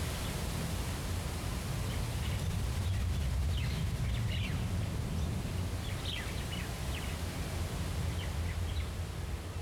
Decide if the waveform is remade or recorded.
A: recorded